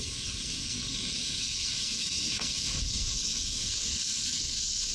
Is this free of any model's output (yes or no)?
no